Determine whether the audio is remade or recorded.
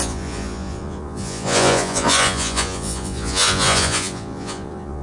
remade